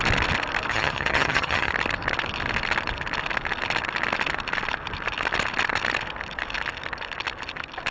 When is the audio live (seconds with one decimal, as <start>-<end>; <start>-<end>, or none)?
0.0-0.7; 1.7-7.9